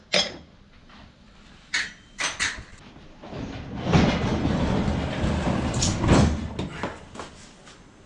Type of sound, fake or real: real